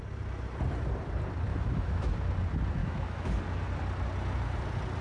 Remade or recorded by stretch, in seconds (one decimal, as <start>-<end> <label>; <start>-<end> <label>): 0.0-1.5 recorded; 1.5-2.1 remade; 2.1-2.8 recorded; 2.8-3.4 remade; 3.4-5.0 recorded